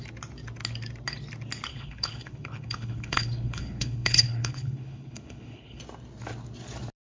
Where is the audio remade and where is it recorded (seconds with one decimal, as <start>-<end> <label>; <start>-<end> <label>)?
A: 0.0-1.7 recorded; 1.7-5.8 remade; 5.8-7.1 recorded

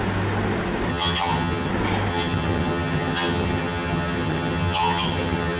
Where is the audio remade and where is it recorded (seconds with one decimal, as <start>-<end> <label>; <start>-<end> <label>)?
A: 0.0-0.9 recorded; 0.9-1.7 remade; 1.7-2.1 recorded; 2.1-5.6 remade

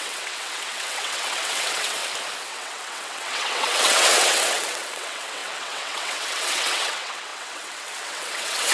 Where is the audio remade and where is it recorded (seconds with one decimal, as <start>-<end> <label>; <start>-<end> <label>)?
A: 0.0-2.0 remade; 2.0-2.5 recorded; 2.5-8.7 remade

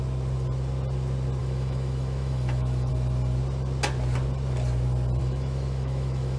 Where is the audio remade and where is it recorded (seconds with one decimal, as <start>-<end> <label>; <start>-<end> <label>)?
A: 0.0-1.4 recorded; 1.4-2.9 remade; 2.9-5.2 recorded; 5.2-6.4 remade

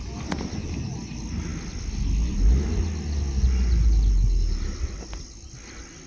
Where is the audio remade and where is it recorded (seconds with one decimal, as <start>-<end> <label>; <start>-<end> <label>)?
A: 0.0-6.1 recorded

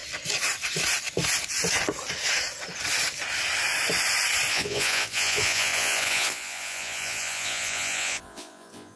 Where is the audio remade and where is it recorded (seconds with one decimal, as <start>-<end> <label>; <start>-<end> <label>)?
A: 0.0-4.5 recorded; 4.5-9.0 remade

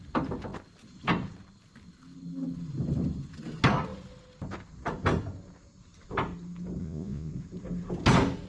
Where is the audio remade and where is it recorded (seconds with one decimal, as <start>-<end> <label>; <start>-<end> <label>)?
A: 0.0-6.8 recorded; 6.8-7.3 remade; 7.3-8.5 recorded

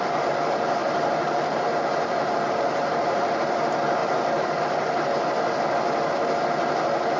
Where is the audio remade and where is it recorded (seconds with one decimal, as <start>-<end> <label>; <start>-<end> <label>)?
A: 0.0-0.8 recorded; 0.8-3.4 remade; 3.4-7.2 recorded